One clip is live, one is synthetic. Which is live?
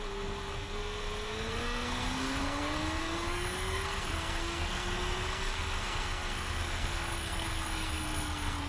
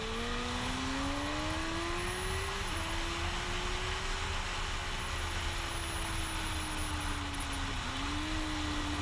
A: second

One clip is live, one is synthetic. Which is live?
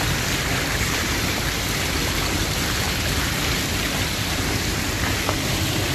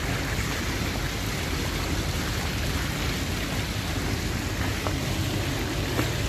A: second